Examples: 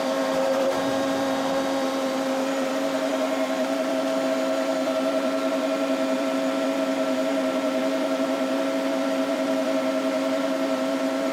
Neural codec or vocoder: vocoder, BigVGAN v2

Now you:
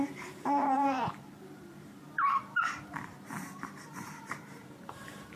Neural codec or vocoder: vocoder, BigVGAN v2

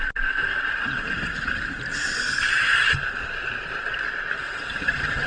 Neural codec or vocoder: none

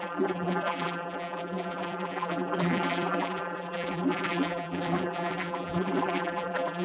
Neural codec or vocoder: vocoder, BigVGAN v2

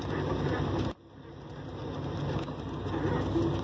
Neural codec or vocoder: none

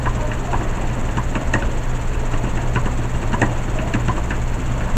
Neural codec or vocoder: none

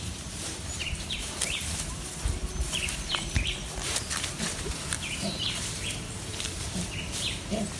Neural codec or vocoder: vocoder, BigVGAN v2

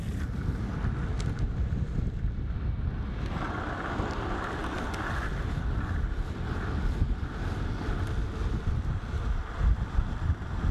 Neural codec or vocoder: none